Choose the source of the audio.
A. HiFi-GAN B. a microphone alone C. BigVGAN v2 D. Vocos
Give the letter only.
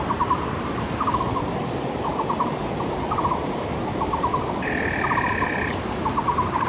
B